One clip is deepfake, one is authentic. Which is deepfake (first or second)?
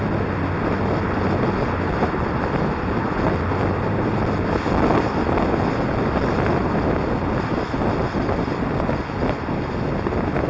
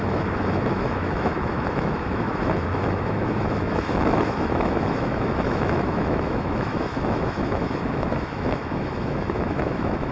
second